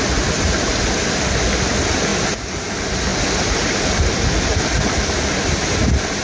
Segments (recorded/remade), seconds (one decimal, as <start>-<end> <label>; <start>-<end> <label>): 0.0-3.1 recorded; 3.1-5.3 remade; 5.3-6.2 recorded